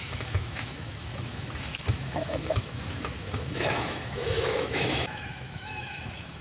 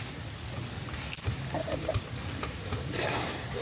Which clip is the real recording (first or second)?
second